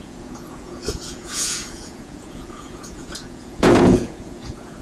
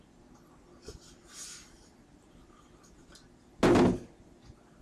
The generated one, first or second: first